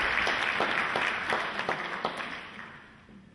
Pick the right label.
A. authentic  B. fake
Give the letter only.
A